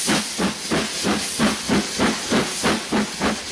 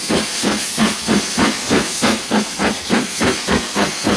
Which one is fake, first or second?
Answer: second